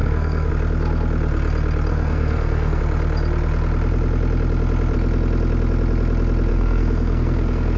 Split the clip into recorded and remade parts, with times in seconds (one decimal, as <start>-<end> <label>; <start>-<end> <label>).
0.0-0.5 remade; 0.5-1.9 recorded; 1.9-2.8 remade; 2.8-6.5 recorded; 6.5-7.8 remade